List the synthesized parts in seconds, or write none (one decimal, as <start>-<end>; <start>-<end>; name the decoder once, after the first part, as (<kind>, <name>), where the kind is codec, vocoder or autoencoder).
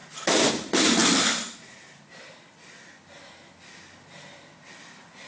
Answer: none